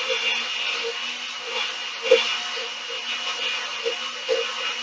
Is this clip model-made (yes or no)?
no